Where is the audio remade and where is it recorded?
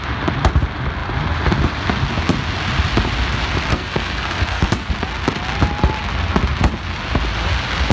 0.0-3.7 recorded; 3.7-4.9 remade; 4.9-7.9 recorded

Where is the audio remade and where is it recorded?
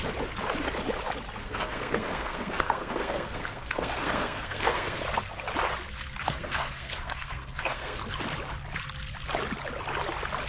0.0-1.4 recorded; 1.4-5.0 remade; 5.0-6.2 recorded; 6.2-8.0 remade; 8.0-10.5 recorded